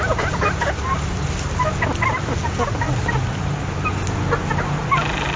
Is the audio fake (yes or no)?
no